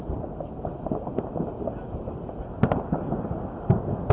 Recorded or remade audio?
recorded